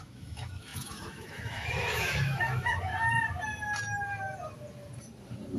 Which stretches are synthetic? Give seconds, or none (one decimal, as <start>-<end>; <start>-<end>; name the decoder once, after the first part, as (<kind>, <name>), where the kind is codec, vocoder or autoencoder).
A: 0.0-2.9 (autoencoder, DAC-VAE)